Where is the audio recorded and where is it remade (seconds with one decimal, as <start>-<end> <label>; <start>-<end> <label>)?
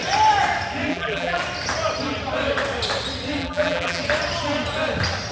0.0-0.9 recorded; 0.9-1.4 remade; 1.4-3.4 recorded; 3.4-4.0 remade; 4.0-5.3 recorded